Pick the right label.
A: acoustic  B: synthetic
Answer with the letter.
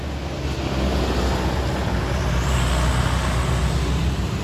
A